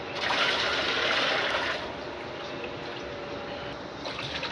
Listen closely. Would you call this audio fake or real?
real